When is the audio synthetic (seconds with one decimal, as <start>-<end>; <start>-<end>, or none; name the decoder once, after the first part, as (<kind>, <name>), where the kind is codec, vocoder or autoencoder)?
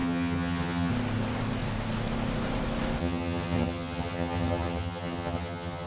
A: 0.0-0.9 (vocoder, HiFi-GAN); 3.0-5.9